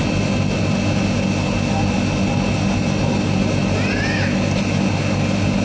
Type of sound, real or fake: real